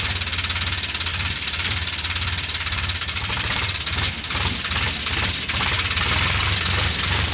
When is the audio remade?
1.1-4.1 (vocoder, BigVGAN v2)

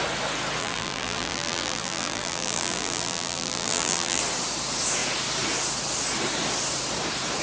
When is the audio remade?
0.6-4.2 (vocoder, BigVGAN v2)

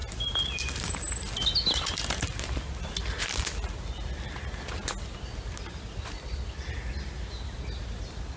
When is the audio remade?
none

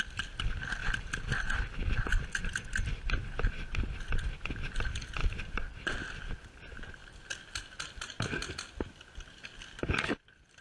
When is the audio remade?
0.8-3.5 (vocoder, BigVGAN v2); 5.2-6.1

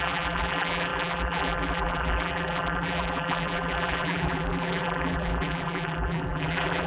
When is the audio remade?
0.0-6.9 (vocoder, BigVGAN v2)